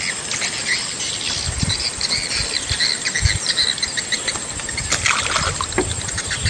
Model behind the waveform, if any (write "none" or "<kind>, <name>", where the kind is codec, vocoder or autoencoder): none